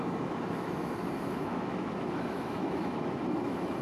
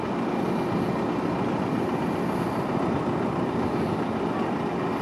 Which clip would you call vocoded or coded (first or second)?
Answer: first